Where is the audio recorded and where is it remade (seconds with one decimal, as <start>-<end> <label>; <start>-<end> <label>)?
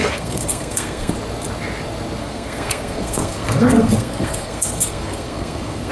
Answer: 0.0-1.1 remade; 1.1-2.2 recorded; 2.2-5.9 remade